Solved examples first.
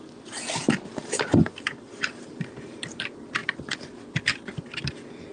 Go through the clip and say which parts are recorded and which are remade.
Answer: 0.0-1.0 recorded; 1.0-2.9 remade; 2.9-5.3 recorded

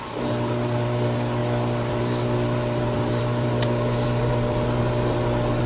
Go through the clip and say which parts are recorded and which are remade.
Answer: 0.0-5.7 recorded